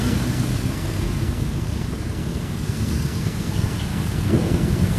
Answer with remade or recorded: remade